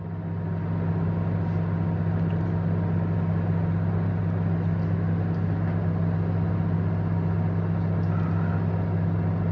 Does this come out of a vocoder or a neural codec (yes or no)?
no